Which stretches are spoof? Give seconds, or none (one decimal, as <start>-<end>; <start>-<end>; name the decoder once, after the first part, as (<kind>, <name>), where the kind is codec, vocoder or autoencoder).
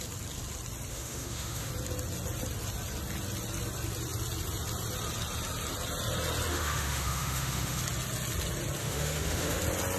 0.9-1.7 (autoencoder, DAC-VAE); 6.5-7.8; 8.8-9.6